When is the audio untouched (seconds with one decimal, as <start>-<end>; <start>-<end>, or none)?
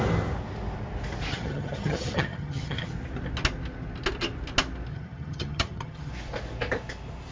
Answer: 0.0-1.3; 2.9-4.9; 6.1-7.3